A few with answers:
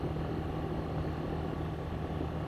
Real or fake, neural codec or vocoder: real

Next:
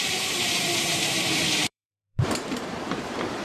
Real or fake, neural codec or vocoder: fake, vocoder, BigVGAN v2